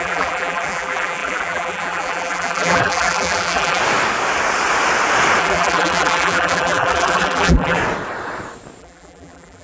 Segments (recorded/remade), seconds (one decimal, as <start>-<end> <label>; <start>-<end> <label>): 0.0-3.8 remade; 3.8-5.4 recorded; 5.4-7.8 remade; 7.8-8.8 recorded; 8.8-9.6 remade